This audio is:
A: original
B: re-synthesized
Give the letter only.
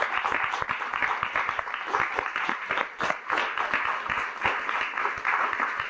A